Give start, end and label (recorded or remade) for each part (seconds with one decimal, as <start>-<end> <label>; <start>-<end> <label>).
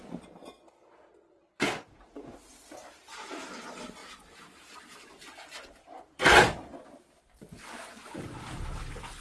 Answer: 0.0-9.2 recorded